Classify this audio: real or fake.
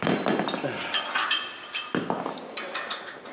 real